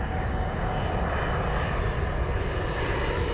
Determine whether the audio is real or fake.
real